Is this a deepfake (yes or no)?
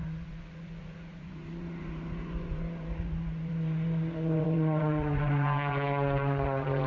yes